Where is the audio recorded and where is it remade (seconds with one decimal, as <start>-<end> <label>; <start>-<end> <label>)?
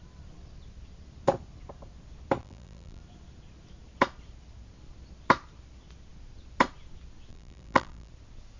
0.0-2.4 recorded; 2.4-3.0 remade; 3.0-7.3 recorded; 7.3-8.1 remade; 8.1-8.6 recorded